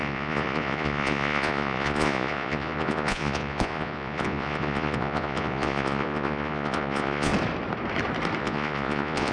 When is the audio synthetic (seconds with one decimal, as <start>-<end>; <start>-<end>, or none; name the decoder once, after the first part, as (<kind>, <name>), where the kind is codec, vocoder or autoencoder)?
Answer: 0.0-7.3 (vocoder, Vocos); 8.4-9.3